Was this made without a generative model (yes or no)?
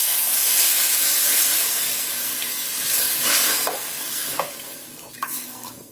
no